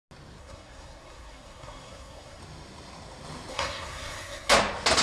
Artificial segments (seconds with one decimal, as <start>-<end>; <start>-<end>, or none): 0.4-2.4; 3.5-4.5